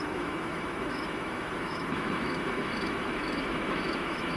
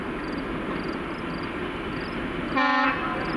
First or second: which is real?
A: second